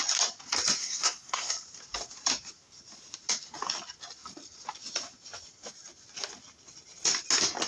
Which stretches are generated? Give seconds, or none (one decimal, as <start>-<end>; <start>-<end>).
0.8-1.5